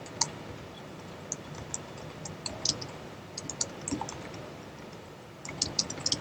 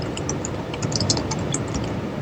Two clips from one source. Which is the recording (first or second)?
first